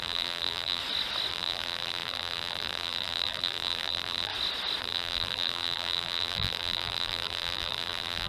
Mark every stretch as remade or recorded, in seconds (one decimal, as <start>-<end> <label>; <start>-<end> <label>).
0.0-0.8 remade; 0.8-1.3 recorded; 1.3-4.3 remade; 4.3-4.8 recorded; 4.8-8.3 remade